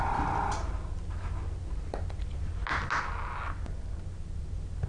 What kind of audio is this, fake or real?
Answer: real